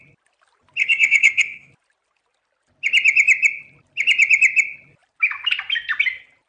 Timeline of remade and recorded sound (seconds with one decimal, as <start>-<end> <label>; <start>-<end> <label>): 0.0-0.8 recorded; 0.8-1.7 remade; 1.7-6.5 recorded